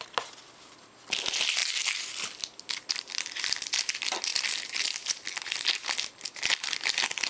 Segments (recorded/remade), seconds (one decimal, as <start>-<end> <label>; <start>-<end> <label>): 0.0-7.3 recorded